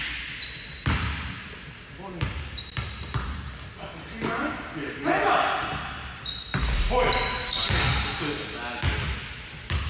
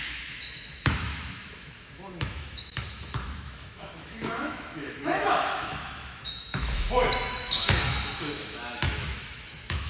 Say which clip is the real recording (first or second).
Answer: first